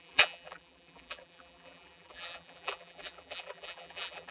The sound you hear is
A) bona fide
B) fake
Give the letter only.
B